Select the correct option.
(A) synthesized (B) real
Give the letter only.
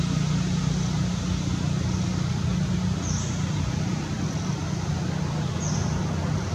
B